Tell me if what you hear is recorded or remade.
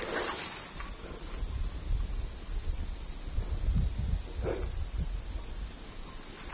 recorded